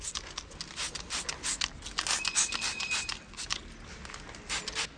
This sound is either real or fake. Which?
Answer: real